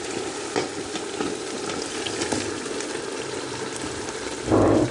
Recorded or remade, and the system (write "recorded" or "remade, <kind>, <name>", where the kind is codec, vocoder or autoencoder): recorded